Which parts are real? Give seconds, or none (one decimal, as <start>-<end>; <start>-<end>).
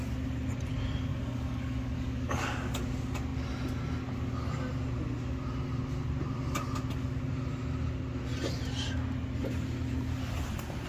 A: 0.0-1.1; 2.8-10.9